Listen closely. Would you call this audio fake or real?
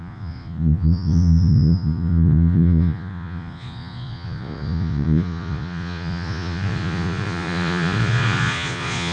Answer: fake